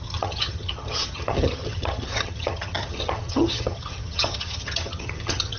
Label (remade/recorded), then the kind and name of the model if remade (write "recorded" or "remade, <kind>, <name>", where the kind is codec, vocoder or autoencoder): remade, vocoder, HiFi-GAN